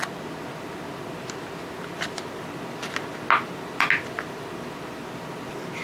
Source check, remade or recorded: recorded